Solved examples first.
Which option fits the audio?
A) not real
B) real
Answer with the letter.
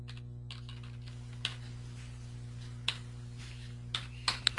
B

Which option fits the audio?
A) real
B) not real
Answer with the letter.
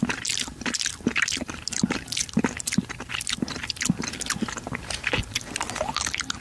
A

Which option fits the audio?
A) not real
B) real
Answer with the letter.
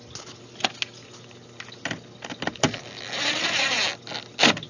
B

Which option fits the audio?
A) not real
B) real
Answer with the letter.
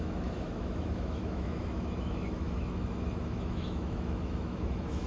A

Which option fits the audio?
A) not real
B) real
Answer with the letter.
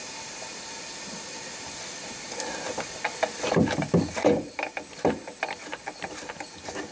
B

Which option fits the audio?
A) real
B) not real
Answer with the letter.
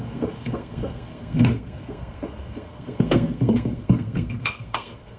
B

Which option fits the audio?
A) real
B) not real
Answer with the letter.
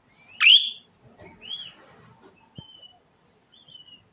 A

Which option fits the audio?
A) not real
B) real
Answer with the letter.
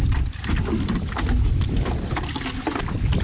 B